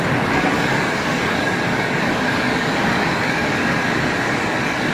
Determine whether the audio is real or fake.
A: fake